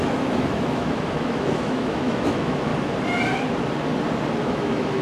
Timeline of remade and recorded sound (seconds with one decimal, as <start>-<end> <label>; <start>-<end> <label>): 0.0-2.7 remade; 2.7-4.4 recorded; 4.4-5.0 remade